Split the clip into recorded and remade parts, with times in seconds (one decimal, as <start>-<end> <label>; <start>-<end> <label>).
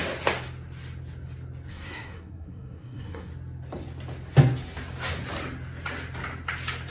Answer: 0.0-1.7 recorded; 1.7-3.3 remade; 3.3-6.9 recorded